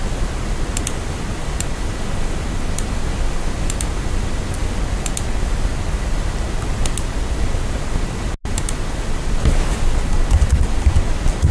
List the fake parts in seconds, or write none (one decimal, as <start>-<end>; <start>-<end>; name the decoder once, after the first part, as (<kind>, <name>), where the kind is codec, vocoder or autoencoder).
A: none